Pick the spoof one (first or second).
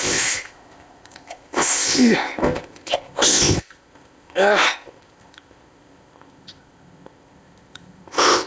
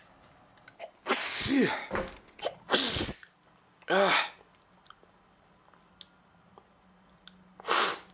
first